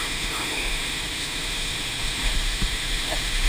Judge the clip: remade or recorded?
remade